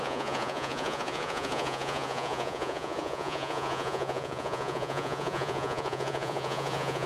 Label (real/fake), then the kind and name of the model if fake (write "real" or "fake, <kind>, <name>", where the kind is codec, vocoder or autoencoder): fake, vocoder, Vocos